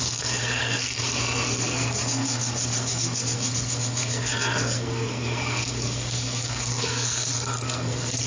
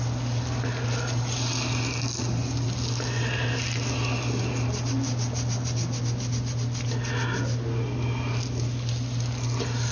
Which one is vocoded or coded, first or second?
first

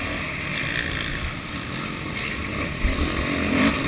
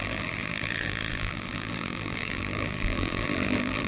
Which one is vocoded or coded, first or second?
second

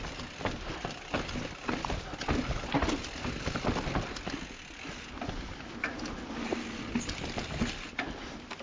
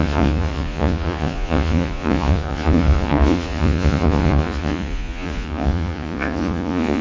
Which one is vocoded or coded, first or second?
second